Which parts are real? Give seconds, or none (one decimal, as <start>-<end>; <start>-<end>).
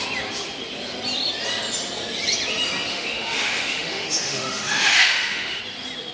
0.0-2.9; 5.6-6.1